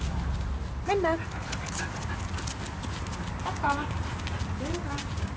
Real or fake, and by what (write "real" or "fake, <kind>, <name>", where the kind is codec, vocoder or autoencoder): real